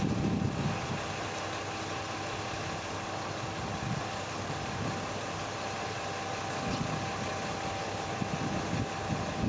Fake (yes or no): no